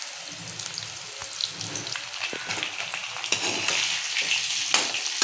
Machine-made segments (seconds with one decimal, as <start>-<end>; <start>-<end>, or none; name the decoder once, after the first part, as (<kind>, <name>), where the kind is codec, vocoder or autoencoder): none